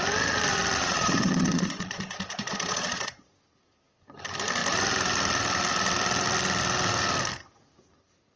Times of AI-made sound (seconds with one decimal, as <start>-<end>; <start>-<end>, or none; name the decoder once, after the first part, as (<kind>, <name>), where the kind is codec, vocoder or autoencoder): 0.8-3.3 (vocoder, Vocos)